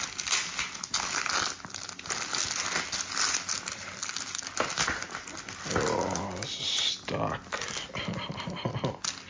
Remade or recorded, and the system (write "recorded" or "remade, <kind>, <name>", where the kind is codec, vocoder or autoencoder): recorded